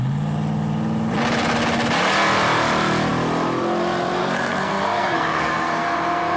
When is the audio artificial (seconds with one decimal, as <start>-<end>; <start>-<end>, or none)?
4.2-6.4